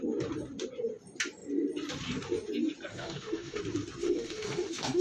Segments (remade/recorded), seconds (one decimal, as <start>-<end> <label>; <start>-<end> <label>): 0.0-2.9 recorded; 2.9-3.6 remade; 3.6-4.0 recorded; 4.0-5.0 remade